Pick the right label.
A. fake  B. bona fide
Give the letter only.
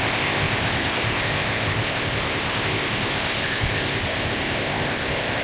A